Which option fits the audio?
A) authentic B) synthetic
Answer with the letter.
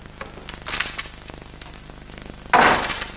A